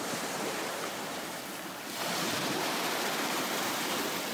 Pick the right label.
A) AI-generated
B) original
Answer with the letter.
A